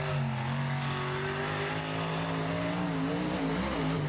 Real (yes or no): yes